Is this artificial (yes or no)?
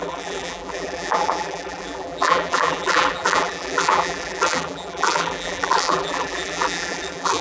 yes